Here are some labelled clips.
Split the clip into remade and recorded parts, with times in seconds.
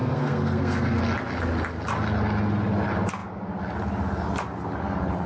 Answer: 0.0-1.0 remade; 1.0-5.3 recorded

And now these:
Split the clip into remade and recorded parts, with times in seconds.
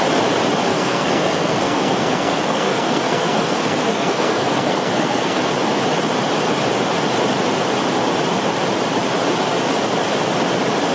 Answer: 0.0-0.7 recorded; 0.7-5.4 remade; 5.4-10.9 recorded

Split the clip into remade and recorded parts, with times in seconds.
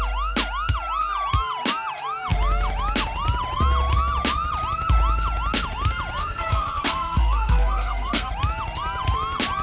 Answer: 0.0-6.2 recorded; 6.2-8.3 remade; 8.3-9.6 recorded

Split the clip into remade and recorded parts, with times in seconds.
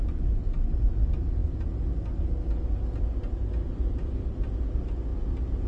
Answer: 0.0-5.7 recorded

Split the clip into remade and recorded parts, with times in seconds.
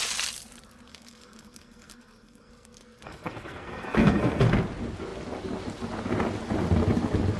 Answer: 0.0-0.9 recorded; 0.9-4.5 remade; 4.5-7.4 recorded